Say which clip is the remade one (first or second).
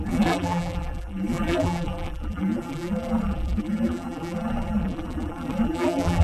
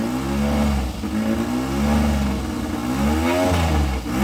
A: first